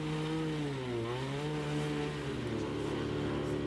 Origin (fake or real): real